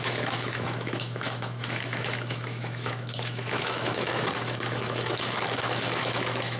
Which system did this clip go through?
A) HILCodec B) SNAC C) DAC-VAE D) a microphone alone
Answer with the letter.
C